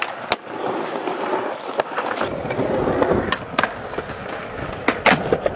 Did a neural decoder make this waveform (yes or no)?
no